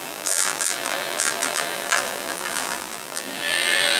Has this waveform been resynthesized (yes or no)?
yes